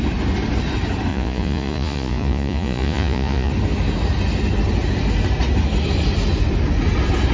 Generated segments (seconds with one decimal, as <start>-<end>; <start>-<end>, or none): 1.1-3.5